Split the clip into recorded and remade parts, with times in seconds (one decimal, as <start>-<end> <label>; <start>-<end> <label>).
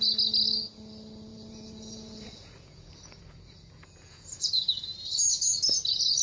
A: 0.0-1.3 recorded; 1.3-5.0 remade; 5.0-6.2 recorded